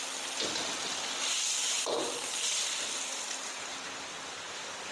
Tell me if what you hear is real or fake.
real